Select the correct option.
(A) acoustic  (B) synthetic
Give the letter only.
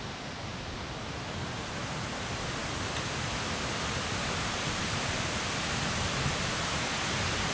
A